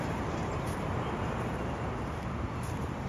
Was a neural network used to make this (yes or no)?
no